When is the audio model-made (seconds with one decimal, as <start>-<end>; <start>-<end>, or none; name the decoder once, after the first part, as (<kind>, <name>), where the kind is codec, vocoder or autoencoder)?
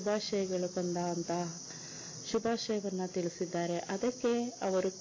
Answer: none